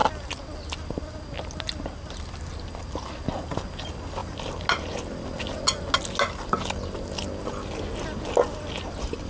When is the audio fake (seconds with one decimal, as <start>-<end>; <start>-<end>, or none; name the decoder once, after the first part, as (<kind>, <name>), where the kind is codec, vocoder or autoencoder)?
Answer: none